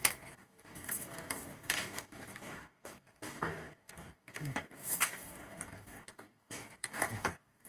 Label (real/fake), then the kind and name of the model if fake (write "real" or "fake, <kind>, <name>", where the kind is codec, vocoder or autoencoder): fake, codec, DAC